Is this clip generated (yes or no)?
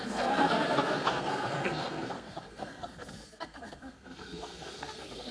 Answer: yes